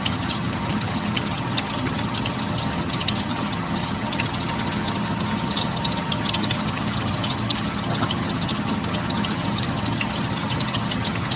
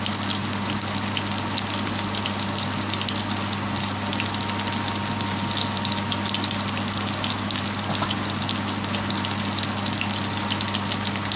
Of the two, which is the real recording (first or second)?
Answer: second